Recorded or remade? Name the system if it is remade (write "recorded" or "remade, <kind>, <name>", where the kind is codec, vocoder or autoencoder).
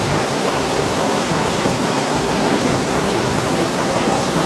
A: remade, codec, SNAC